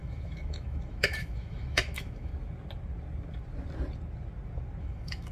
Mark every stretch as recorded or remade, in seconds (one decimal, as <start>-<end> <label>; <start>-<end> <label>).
0.0-2.3 remade; 2.3-4.8 recorded; 4.8-5.3 remade